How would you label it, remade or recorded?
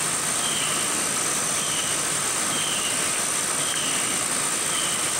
recorded